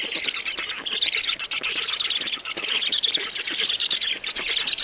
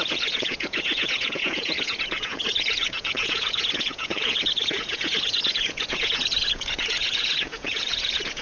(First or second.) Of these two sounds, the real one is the first